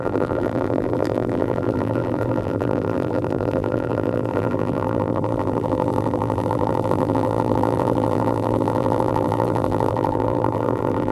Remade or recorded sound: remade